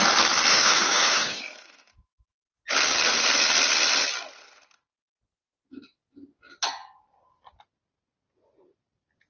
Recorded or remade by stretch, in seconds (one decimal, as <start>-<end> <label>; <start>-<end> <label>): 0.0-0.5 recorded; 0.5-2.6 remade; 2.6-9.3 recorded